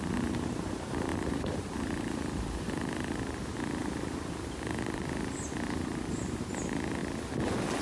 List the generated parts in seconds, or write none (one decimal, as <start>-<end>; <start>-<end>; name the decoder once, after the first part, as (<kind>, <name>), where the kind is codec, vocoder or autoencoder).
0.0-7.0 (vocoder, BigVGAN v2)